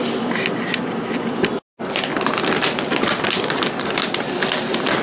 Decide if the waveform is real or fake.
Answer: real